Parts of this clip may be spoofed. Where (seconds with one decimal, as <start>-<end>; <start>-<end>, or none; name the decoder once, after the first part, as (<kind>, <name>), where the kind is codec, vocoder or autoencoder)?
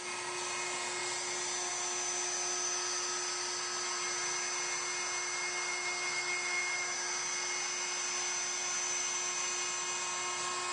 none